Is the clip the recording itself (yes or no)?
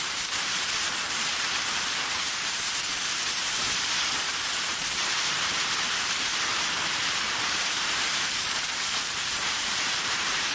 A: no